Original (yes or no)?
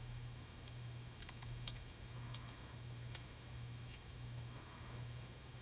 no